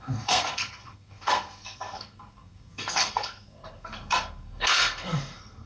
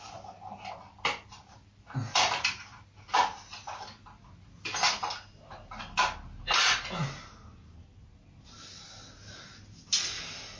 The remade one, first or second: first